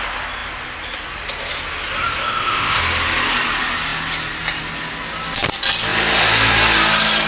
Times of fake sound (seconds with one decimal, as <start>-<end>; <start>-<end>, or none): 2.2-2.8